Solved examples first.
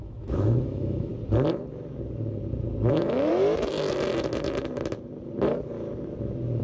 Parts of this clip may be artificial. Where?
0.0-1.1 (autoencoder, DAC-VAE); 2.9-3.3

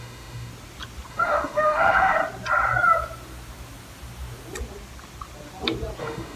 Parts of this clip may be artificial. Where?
0.0-0.5 (autoencoder, DAC-VAE); 1.1-2.2; 6.0-6.4

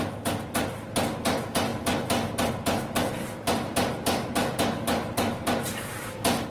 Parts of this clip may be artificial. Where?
none

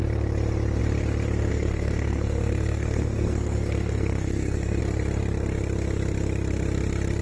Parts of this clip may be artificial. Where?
1.5-4.8 (codec, SNAC)